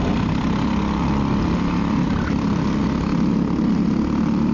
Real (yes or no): yes